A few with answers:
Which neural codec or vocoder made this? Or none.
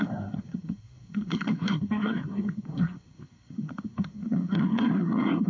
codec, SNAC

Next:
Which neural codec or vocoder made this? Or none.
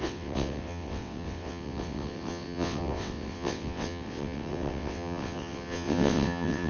vocoder, WaveNeXt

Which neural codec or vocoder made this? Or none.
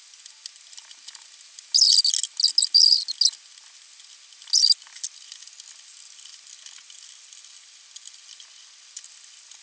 none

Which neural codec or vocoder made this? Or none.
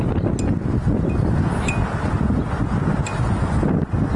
none